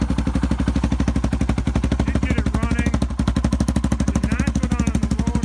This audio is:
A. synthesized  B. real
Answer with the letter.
B